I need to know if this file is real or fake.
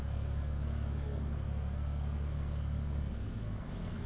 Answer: fake